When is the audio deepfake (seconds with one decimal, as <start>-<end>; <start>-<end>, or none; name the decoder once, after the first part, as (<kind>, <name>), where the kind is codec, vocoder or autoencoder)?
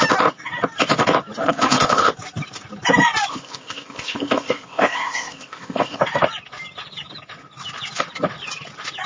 1.4-2.1 (codec, ZipCodec); 3.3-6.0